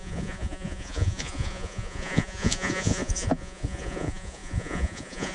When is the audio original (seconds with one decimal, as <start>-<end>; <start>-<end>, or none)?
none